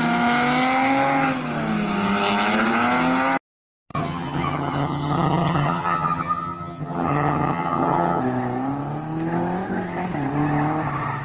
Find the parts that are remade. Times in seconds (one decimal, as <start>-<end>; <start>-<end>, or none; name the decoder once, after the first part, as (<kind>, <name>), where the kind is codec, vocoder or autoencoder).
3.9-8.2 (vocoder, HiFi-GAN)